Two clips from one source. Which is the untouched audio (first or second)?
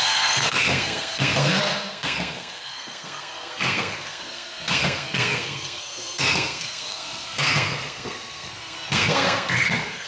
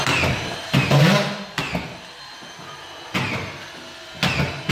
second